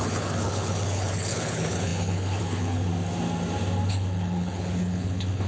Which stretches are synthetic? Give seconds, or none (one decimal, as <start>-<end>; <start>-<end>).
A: 0.0-2.9; 3.9-5.5